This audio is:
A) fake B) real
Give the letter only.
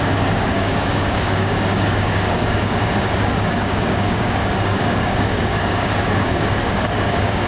A